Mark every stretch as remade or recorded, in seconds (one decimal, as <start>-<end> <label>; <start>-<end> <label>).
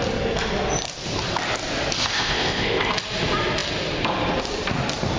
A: 0.0-2.1 recorded; 2.1-2.9 remade; 2.9-5.2 recorded